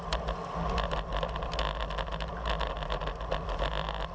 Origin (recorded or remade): recorded